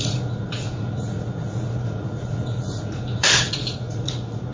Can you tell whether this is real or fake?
fake